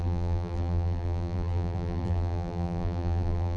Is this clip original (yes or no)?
no